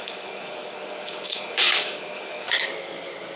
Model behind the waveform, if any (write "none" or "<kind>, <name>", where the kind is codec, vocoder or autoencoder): codec, DAC